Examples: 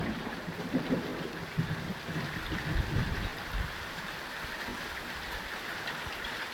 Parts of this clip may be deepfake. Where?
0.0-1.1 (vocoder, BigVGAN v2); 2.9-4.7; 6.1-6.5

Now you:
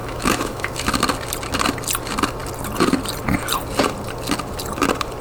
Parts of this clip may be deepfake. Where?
0.0-0.9 (autoencoder, DAC-VAE)

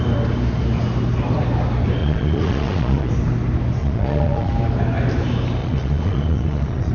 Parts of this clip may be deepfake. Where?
2.0-3.1 (vocoder, Vocos); 3.8-4.5; 5.6-6.9

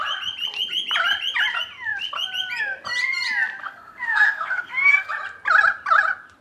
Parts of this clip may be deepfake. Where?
3.6-5.1 (codec, SNAC)

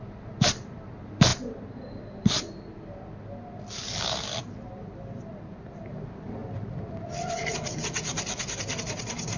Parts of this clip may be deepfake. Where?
none